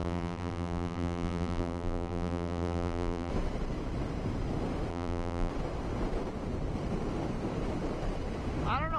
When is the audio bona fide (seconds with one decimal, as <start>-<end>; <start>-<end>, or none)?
3.3-4.9; 5.5-9.0